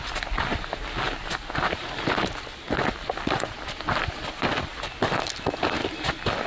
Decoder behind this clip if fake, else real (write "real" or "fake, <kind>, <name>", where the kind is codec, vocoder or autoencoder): real